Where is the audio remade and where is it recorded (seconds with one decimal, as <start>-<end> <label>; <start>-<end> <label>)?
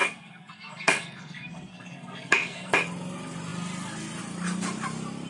0.0-2.7 remade; 2.7-5.3 recorded